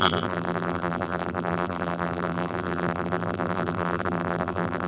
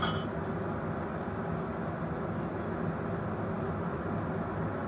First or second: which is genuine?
second